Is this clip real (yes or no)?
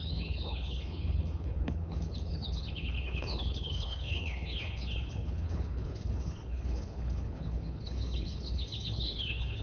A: no